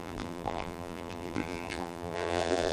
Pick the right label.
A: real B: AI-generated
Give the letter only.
B